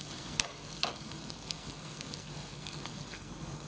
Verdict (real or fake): fake